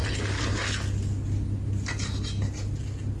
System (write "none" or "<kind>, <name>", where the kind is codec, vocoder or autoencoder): none